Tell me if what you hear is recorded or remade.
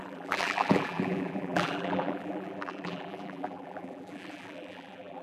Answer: remade